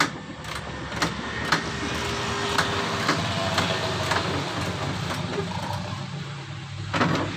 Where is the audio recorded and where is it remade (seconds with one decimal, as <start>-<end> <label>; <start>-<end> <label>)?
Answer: 0.0-5.3 recorded; 5.3-6.6 remade; 6.6-7.4 recorded